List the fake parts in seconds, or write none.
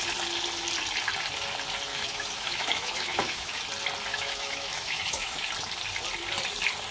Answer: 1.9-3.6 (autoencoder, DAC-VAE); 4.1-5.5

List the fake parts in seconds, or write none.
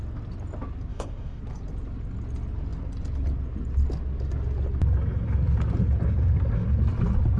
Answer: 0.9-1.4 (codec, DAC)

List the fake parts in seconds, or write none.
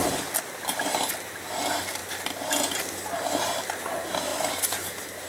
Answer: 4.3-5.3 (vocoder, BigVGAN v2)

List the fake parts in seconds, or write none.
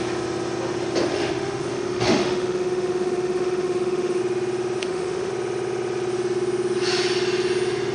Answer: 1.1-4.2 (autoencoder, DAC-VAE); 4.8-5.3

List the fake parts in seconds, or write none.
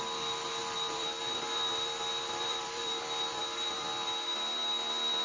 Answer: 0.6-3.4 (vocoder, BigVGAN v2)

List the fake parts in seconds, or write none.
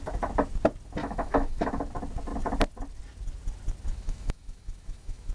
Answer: 1.0-1.8 (autoencoder, DAC-VAE); 3.9-5.3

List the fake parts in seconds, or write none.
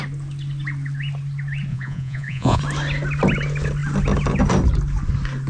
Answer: 1.7-2.6 (vocoder, Vocos)